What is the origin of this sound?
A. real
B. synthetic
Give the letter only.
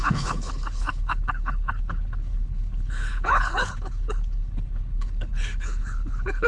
B